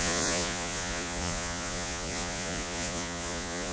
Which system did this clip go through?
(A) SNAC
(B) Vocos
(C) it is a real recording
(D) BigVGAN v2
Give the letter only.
B